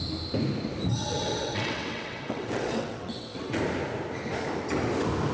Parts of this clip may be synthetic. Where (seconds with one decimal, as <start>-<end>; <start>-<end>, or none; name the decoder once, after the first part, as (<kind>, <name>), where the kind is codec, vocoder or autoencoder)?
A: 1.0-3.6 (vocoder, WaveNeXt)

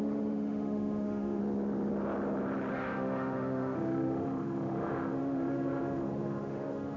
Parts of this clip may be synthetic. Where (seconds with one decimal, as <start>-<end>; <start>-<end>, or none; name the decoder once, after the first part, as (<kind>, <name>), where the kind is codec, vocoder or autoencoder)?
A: 0.0-1.4 (autoencoder, DAC-VAE); 2.7-7.0

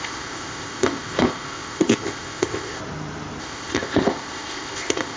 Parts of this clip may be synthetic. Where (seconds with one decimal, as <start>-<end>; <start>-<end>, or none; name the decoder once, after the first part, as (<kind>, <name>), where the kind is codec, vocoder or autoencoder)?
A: 0.0-2.8 (codec, ZipCodec); 3.4-5.2

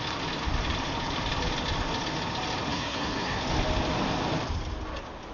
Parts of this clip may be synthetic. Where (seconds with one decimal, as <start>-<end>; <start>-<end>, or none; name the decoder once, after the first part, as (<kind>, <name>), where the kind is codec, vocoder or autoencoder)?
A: 2.7-3.4 (codec, SNAC)

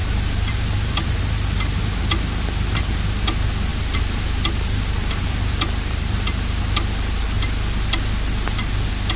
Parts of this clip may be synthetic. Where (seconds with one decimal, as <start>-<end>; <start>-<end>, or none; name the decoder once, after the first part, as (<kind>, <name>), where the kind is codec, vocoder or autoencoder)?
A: 0.0-1.2 (vocoder, BigVGAN v2); 3.7-6.6

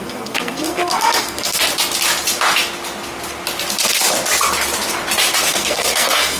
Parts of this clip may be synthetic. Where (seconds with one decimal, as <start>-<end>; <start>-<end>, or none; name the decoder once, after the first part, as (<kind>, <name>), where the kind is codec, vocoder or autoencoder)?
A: 0.0-1.6 (codec, SNAC); 5.4-6.4

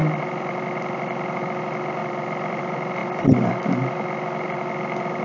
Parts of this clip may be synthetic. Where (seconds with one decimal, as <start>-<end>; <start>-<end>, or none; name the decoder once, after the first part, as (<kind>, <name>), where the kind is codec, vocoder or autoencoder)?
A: 0.0-1.6 (vocoder, BigVGAN v2); 2.0-2.6; 3.0-3.5